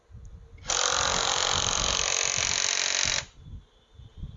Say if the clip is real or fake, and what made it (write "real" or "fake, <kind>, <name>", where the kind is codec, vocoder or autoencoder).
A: real